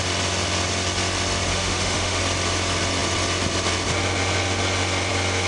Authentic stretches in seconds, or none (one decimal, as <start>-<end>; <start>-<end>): 0.0-1.5; 2.2-5.5